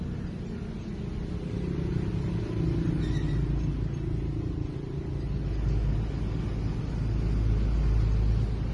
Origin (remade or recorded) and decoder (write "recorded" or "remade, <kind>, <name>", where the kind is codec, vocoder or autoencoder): recorded